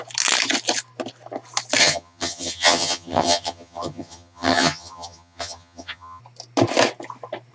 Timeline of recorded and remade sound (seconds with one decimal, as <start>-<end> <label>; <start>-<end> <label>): 0.0-1.8 recorded; 1.8-6.2 remade; 6.2-7.5 recorded